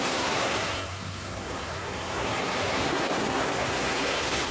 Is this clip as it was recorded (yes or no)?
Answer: no